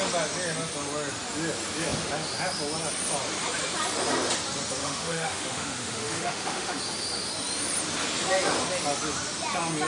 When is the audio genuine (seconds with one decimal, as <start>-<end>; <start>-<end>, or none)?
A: 0.0-4.8; 6.8-9.9